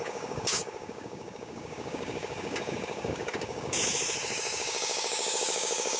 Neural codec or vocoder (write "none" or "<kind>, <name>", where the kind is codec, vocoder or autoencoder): codec, DAC